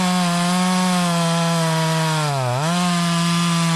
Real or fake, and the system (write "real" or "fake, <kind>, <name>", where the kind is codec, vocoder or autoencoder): real